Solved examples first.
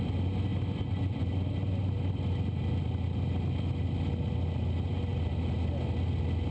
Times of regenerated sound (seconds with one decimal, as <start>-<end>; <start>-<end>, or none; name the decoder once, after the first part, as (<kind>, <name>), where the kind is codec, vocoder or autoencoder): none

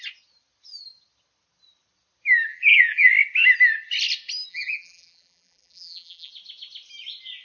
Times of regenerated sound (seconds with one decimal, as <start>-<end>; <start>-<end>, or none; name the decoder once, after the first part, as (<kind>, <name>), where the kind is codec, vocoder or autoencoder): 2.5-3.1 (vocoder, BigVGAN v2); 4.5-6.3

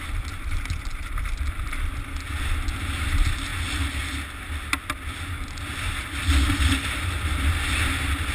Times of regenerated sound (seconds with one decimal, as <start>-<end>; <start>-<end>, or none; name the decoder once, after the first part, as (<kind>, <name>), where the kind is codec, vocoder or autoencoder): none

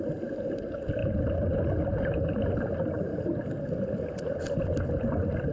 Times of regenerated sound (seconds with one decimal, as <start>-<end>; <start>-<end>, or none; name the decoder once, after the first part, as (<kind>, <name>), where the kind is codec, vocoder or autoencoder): 1.0-2.6 (vocoder, BigVGAN v2); 3.1-4.0

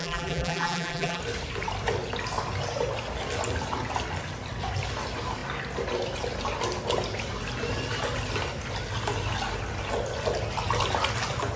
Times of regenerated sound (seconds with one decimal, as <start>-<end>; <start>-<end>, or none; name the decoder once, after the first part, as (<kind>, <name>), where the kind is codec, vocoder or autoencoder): 0.0-1.2 (vocoder, BigVGAN v2)